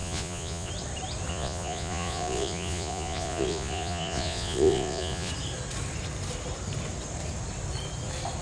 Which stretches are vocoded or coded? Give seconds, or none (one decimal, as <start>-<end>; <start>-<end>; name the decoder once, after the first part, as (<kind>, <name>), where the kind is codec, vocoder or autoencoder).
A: 0.0-0.7 (vocoder, Vocos); 1.3-5.3